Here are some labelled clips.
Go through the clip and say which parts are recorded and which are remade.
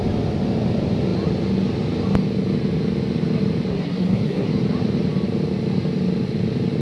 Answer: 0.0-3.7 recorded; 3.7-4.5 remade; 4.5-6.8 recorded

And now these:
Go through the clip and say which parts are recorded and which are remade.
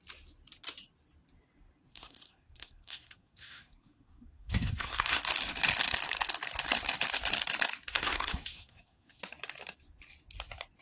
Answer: 0.0-1.9 recorded; 1.9-5.2 remade; 5.2-7.9 recorded; 7.9-9.2 remade; 9.2-10.8 recorded